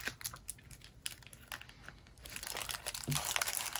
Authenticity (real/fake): real